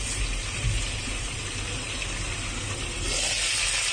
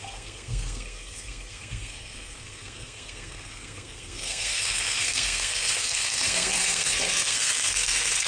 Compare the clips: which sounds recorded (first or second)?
first